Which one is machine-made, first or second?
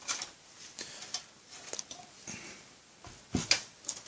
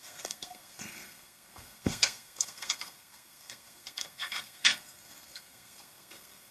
second